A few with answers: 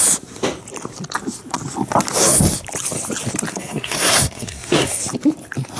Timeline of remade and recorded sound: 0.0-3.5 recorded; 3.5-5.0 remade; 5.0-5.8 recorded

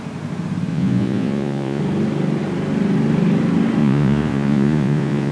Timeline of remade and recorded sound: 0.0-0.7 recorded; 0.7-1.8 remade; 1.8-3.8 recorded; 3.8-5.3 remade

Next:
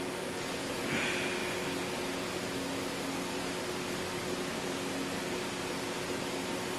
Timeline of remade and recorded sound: 0.0-6.8 recorded

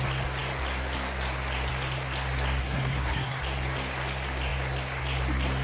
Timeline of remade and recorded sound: 0.0-2.6 recorded; 2.6-3.4 remade; 3.4-5.6 recorded

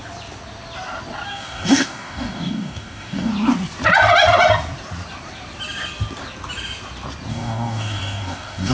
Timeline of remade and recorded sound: 0.0-1.3 recorded; 1.3-3.3 remade; 3.3-7.3 recorded; 7.3-8.7 remade